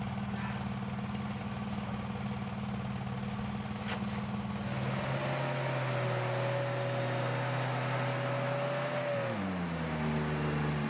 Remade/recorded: recorded